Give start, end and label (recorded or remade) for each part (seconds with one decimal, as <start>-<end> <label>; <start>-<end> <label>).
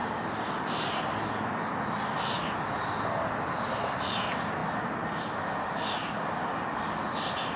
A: 0.0-7.6 recorded